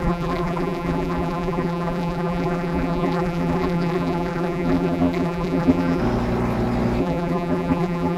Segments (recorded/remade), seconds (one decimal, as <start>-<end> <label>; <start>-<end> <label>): 0.0-6.0 remade; 6.0-7.0 recorded; 7.0-8.2 remade